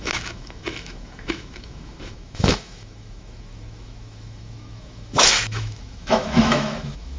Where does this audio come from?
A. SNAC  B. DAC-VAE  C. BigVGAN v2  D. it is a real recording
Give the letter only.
B